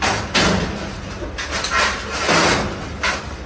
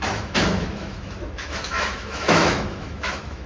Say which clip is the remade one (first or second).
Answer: second